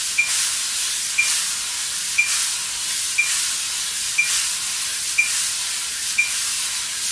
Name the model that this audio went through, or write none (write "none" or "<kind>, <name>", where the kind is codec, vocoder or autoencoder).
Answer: none